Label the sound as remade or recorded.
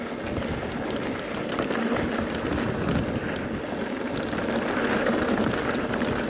recorded